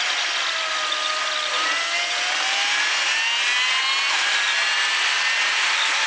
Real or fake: real